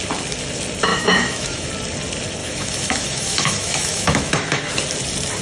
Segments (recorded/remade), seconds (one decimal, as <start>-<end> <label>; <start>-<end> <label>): 0.0-0.9 recorded; 0.9-1.7 remade; 1.7-2.4 recorded; 2.4-4.7 remade; 4.7-5.4 recorded